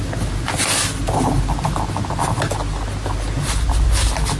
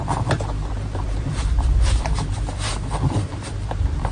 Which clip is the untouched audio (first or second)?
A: first